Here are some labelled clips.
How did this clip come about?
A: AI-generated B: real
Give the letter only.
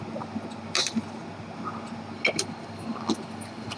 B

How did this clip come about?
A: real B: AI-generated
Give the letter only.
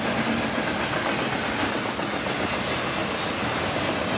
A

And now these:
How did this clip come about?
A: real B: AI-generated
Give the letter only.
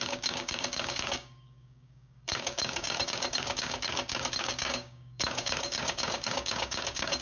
B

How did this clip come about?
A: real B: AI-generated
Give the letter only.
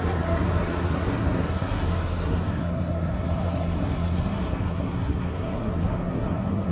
B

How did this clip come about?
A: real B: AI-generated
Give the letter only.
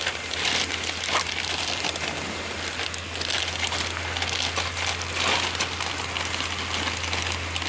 A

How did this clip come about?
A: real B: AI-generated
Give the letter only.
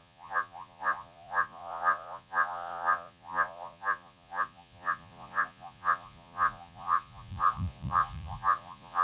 B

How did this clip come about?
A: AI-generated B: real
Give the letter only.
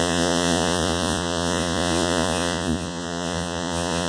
A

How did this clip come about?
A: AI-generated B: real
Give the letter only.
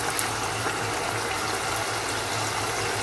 B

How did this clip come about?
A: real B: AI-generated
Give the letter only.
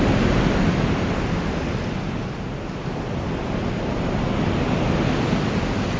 A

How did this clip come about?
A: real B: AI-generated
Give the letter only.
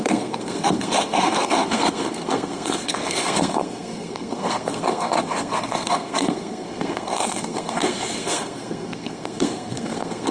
B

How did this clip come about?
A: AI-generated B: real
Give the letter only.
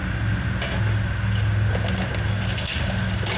B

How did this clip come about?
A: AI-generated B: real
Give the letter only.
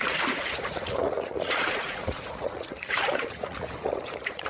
A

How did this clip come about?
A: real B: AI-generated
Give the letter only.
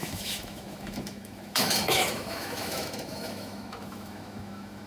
B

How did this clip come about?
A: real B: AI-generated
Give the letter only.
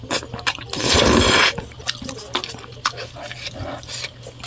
A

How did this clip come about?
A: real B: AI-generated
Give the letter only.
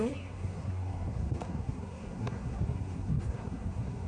B